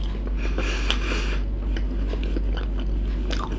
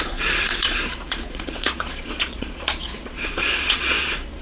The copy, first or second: second